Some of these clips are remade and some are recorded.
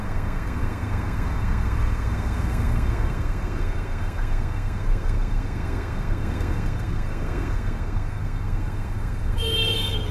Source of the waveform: remade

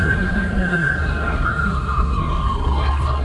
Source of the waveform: remade